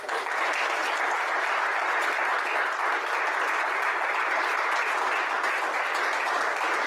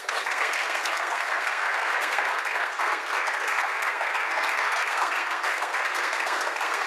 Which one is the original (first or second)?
first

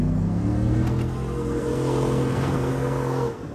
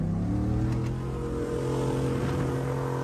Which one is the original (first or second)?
second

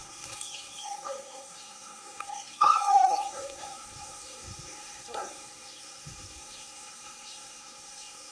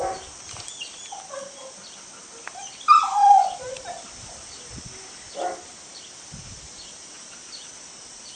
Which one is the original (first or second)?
second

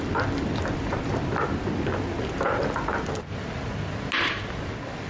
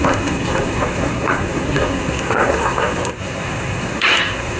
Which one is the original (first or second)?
first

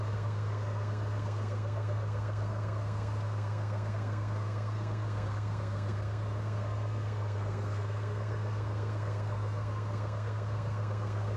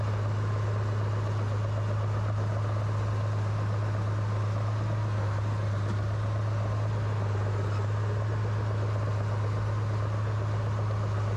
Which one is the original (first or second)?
second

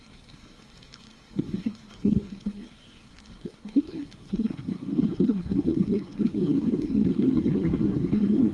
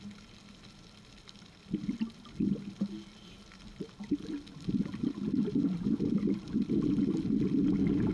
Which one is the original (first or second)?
second